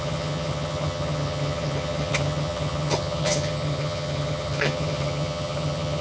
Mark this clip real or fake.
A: fake